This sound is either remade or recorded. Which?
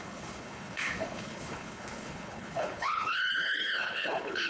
remade